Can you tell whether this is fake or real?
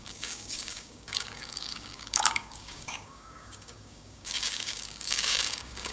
fake